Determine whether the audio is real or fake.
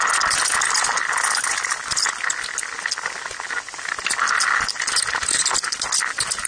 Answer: real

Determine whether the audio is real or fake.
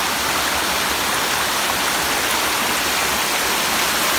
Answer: real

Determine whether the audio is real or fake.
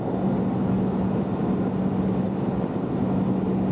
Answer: real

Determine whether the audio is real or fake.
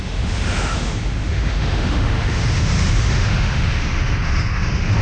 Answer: fake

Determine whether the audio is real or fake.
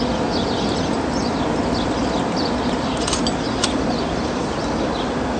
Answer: real